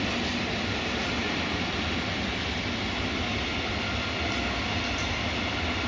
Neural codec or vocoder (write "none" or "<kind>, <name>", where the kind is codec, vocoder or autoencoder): none